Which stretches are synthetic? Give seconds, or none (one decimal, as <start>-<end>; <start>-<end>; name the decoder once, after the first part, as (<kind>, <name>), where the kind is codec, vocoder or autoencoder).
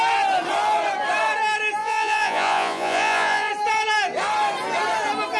1.8-3.5 (vocoder, Vocos)